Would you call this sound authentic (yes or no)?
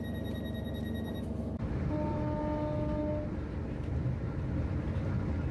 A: yes